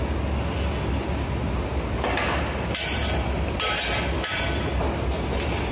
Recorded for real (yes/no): yes